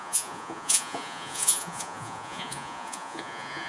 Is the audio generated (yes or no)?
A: yes